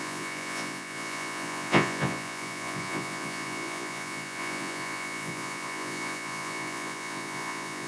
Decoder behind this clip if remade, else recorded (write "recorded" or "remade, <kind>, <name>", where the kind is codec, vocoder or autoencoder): remade, vocoder, Vocos